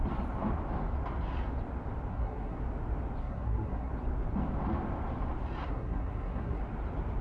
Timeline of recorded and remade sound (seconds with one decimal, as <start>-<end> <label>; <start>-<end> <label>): 0.0-2.1 recorded; 2.1-2.6 remade; 2.6-3.2 recorded; 3.2-3.9 remade; 3.9-5.6 recorded; 5.6-6.6 remade; 6.6-7.2 recorded